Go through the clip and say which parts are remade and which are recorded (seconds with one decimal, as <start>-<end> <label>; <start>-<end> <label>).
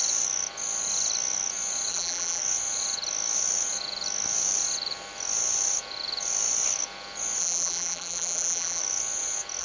0.0-1.9 recorded; 1.9-2.4 remade; 2.4-7.4 recorded; 7.4-8.8 remade; 8.8-9.6 recorded